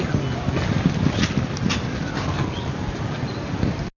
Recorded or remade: recorded